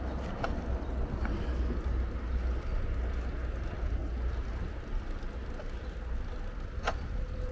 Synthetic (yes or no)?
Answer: no